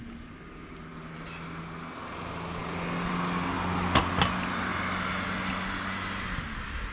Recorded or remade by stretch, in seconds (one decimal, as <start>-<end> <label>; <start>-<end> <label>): 0.0-6.9 recorded